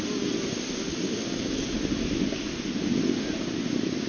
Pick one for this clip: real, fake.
real